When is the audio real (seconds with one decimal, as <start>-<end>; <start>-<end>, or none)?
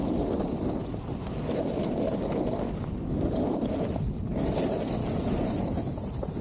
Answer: 0.0-6.4